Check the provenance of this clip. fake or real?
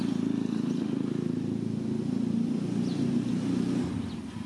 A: real